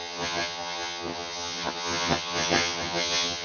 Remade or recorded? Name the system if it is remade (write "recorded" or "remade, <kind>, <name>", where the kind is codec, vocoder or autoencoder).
remade, vocoder, HiFi-GAN